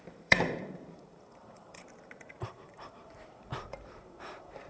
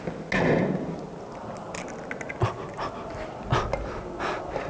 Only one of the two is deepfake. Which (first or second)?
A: first